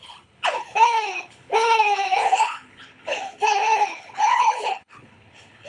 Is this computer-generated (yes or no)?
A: yes